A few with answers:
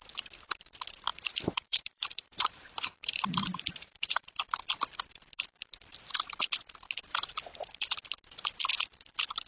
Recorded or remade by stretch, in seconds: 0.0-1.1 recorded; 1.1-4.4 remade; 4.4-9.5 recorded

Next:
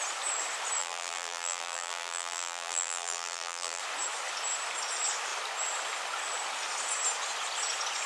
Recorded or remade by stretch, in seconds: 0.0-0.8 recorded; 0.8-3.8 remade; 3.8-8.1 recorded